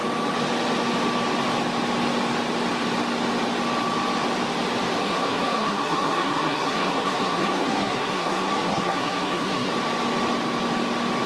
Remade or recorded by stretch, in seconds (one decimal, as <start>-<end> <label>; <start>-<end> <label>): 0.0-5.0 recorded; 5.0-9.7 remade; 9.7-11.3 recorded